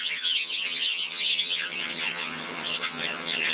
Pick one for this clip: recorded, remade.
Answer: remade